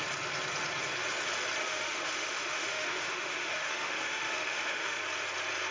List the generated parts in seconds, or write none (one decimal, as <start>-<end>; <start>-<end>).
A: 1.6-5.0